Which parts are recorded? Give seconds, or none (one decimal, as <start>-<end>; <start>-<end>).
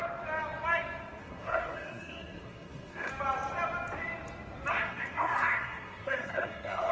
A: 0.0-1.2; 3.1-4.7